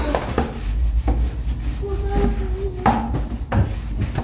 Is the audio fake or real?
real